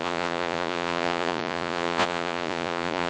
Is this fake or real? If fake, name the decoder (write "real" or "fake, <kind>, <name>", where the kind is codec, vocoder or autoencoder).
fake, vocoder, Vocos